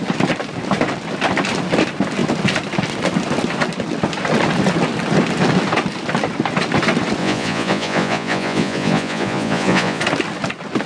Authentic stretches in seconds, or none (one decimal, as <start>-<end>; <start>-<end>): 0.0-7.2; 10.0-10.9